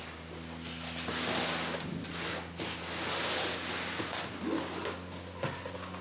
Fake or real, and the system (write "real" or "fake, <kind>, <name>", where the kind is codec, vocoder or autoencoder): real